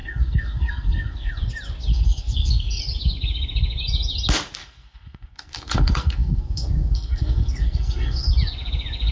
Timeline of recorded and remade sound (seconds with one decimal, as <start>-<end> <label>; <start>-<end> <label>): 0.0-1.3 remade; 1.3-1.9 recorded; 1.9-2.8 remade; 2.8-4.6 recorded; 4.6-8.3 remade; 8.3-9.1 recorded